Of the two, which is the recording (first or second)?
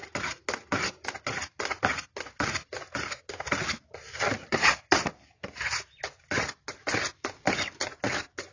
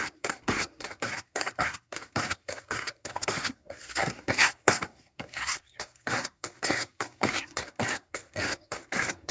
first